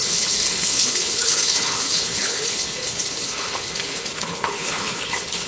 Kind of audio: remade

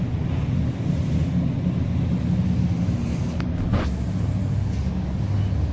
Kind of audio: recorded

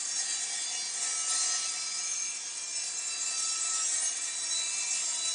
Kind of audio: recorded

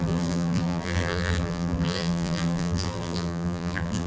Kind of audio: remade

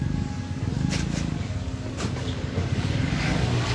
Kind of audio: remade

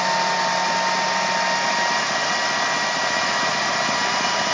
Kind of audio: recorded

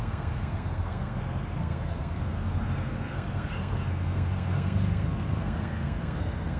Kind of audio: remade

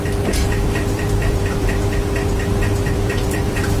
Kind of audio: remade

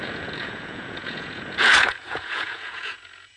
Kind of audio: remade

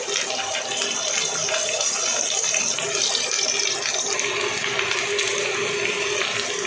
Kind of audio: recorded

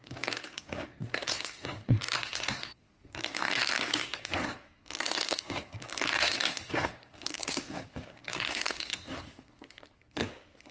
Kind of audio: remade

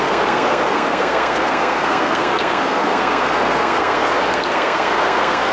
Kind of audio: remade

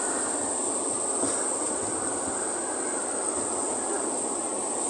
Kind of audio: recorded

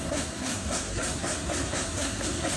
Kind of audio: remade